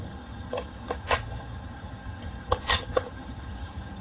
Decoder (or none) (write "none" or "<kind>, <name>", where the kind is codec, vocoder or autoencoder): vocoder, HiFi-GAN